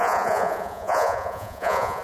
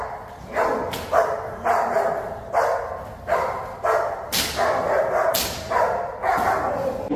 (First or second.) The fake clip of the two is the first